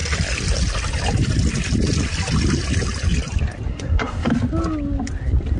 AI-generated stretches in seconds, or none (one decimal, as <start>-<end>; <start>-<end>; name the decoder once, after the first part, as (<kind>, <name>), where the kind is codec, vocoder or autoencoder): 3.7-4.3 (codec, SNAC)